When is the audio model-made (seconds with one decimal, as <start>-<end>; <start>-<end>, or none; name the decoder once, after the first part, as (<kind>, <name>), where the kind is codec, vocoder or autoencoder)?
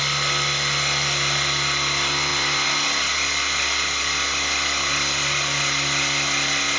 none